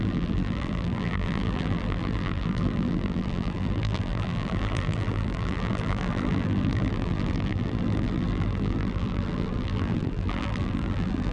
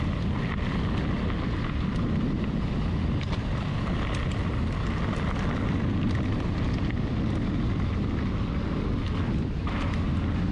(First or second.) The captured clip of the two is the second